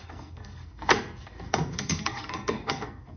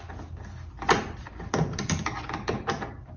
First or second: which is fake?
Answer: first